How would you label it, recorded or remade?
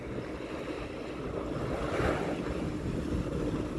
recorded